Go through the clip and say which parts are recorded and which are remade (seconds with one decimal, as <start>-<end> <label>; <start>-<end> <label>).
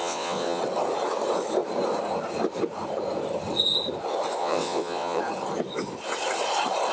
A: 0.0-0.6 remade; 0.6-4.4 recorded; 4.4-5.2 remade; 5.2-6.9 recorded